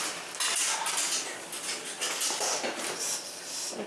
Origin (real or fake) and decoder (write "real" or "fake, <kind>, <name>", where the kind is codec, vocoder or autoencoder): real